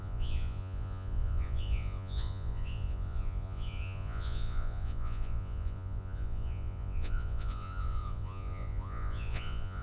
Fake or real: fake